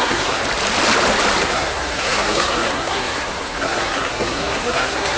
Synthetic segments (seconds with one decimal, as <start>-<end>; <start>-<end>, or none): 0.0-0.4; 1.4-5.2